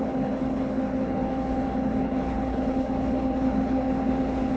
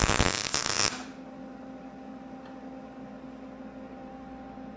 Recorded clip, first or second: second